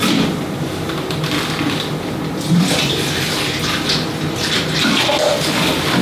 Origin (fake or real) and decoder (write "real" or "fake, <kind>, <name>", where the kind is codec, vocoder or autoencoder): fake, vocoder, BigVGAN v2